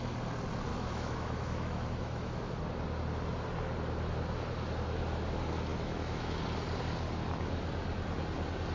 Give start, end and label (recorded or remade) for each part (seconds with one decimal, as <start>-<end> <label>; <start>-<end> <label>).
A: 0.0-0.7 recorded; 0.7-2.6 remade; 2.6-5.7 recorded; 5.7-6.4 remade; 6.4-8.7 recorded